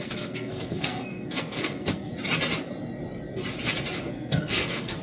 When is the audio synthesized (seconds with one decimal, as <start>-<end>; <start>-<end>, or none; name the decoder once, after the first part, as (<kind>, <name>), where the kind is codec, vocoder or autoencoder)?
0.0-2.1 (codec, SNAC); 4.0-5.0